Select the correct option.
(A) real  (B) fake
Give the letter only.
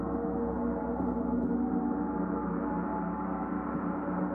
B